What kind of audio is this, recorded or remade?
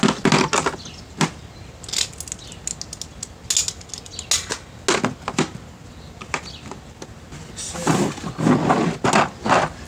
recorded